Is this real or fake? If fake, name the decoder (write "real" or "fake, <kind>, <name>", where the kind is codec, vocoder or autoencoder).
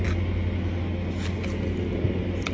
real